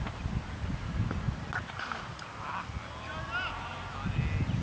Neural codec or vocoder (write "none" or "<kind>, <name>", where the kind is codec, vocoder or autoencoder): none